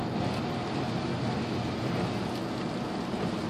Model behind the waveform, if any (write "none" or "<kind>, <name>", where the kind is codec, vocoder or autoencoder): none